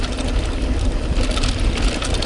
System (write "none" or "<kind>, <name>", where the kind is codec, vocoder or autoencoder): none